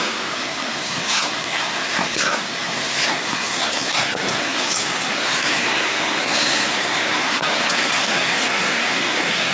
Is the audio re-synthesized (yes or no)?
yes